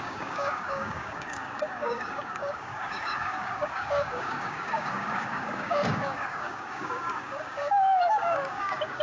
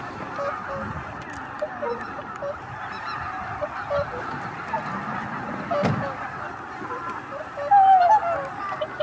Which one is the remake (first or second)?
first